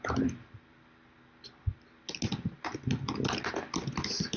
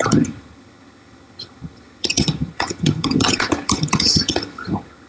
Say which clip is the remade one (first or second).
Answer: second